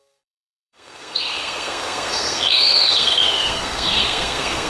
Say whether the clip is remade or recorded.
remade